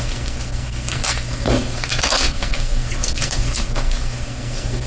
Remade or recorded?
remade